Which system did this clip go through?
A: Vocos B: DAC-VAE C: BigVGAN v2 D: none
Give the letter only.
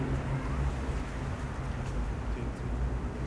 D